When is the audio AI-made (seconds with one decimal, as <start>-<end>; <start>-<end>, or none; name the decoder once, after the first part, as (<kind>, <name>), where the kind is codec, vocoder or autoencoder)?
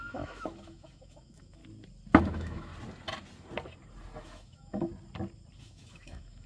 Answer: 0.0-1.6 (autoencoder, DAC-VAE); 2.2-2.7; 4.2-4.9; 5.6-6.5